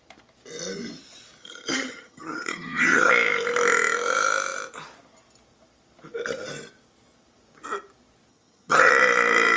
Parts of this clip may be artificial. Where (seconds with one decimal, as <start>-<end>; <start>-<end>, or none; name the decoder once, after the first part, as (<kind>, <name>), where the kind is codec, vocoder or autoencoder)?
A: 1.4-3.1 (vocoder, HiFi-GAN); 8.3-8.9